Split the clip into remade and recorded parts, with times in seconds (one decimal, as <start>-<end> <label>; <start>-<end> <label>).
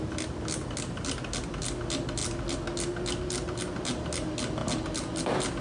0.0-5.6 recorded